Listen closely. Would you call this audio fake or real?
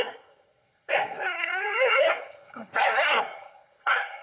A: fake